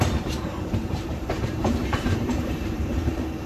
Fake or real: fake